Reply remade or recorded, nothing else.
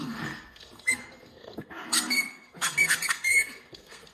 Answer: remade